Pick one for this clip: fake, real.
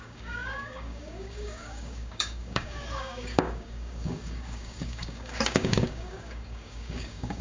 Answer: fake